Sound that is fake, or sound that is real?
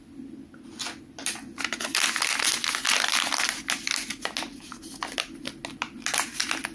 real